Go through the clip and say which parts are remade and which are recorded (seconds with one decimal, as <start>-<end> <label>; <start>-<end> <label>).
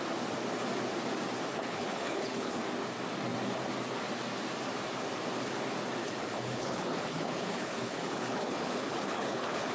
0.0-1.5 recorded; 1.5-2.6 remade; 2.6-6.0 recorded; 6.0-9.7 remade